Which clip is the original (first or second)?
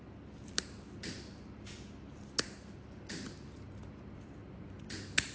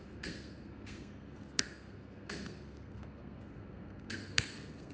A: first